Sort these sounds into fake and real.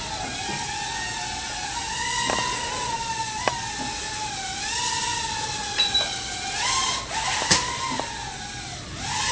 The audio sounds real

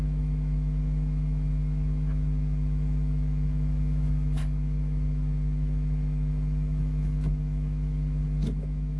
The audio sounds fake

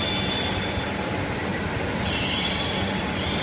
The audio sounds real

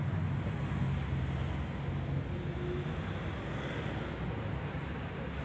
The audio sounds real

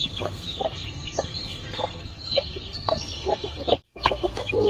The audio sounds fake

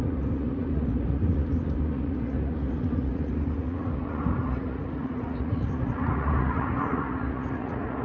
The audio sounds fake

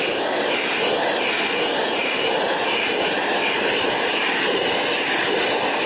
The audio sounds real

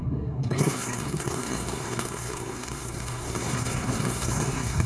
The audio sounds fake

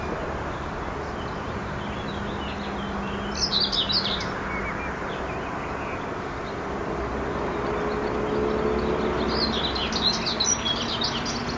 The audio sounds real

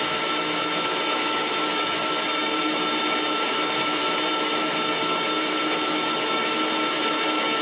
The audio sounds fake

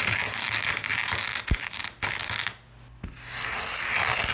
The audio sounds real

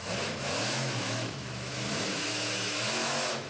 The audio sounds fake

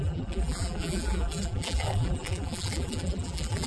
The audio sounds fake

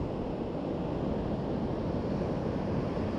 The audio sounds real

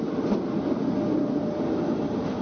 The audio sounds real